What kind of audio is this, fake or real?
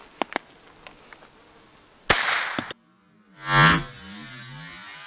real